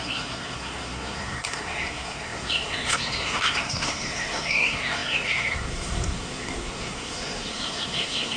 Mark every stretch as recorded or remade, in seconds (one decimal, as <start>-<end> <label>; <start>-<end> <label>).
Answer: 0.0-8.4 remade